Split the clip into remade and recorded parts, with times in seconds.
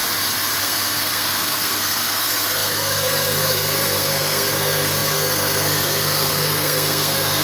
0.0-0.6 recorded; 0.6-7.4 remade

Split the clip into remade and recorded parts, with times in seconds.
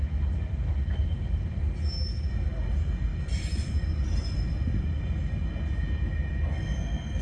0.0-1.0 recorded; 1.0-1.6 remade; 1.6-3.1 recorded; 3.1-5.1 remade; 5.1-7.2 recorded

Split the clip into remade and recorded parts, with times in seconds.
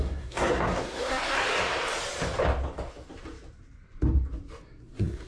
0.0-1.4 remade; 1.4-4.6 recorded; 4.6-5.3 remade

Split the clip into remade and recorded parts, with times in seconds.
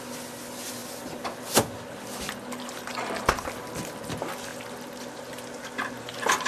0.0-6.5 recorded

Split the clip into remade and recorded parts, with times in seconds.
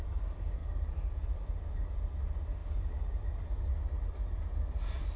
0.0-5.2 recorded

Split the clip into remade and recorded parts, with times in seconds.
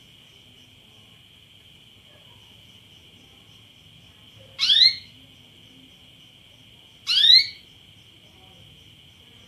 0.0-9.5 recorded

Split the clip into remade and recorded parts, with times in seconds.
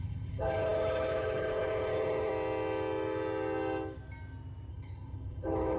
0.0-2.3 remade; 2.3-4.7 recorded; 4.7-5.8 remade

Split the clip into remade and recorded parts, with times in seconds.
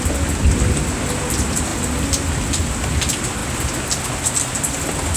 0.0-5.2 recorded